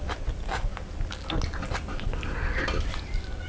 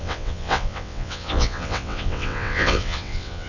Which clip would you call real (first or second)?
first